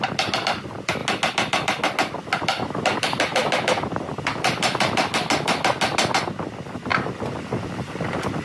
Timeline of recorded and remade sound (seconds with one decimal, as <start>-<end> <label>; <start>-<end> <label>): 0.0-8.4 recorded